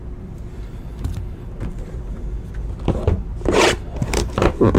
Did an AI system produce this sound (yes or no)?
yes